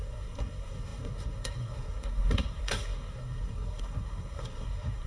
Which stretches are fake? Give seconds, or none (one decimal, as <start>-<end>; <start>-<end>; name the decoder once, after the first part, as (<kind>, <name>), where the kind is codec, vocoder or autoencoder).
0.0-5.1 (codec, SNAC)